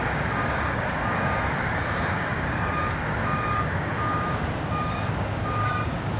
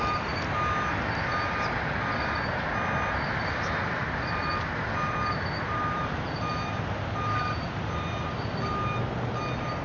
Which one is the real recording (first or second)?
second